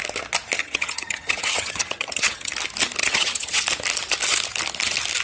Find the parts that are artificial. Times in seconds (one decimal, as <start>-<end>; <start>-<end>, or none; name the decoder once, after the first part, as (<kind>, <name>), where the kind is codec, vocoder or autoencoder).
0.6-2.5 (vocoder, HiFi-GAN); 3.0-3.6